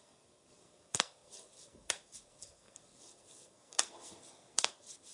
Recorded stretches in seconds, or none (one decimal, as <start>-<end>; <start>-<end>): none

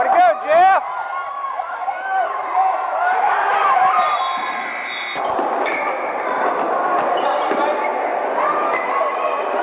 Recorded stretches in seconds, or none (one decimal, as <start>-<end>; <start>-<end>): 0.0-9.6

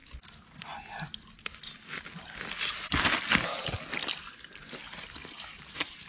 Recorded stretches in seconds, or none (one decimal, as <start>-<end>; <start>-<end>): 0.0-4.8

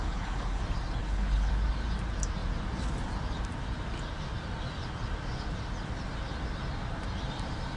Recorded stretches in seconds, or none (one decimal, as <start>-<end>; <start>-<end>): 0.6-1.0; 1.5-7.8

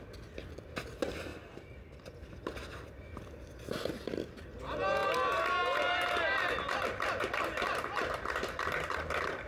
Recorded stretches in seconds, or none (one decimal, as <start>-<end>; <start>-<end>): 0.0-1.3; 2.5-9.5

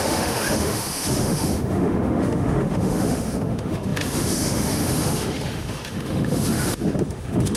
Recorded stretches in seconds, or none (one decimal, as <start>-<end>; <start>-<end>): none

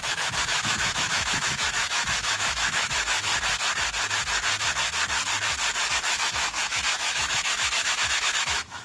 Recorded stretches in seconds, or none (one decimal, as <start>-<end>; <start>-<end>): 3.3-5.9